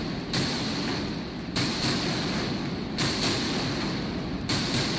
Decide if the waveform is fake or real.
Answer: real